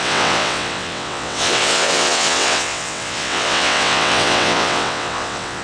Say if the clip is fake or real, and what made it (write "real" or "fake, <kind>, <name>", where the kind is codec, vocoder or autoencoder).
fake, vocoder, WaveNeXt